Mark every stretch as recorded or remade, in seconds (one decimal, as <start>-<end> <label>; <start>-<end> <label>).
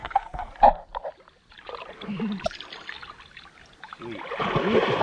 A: 0.0-0.5 remade; 0.5-5.0 recorded